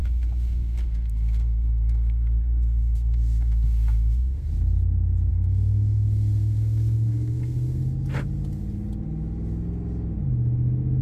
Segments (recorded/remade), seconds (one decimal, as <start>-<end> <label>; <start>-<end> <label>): 0.0-4.5 remade; 4.5-5.3 recorded; 5.3-7.8 remade; 7.8-11.0 recorded